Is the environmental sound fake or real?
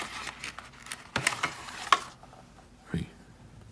real